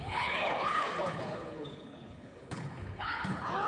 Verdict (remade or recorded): remade